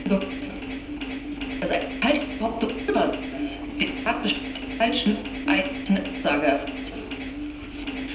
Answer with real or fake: real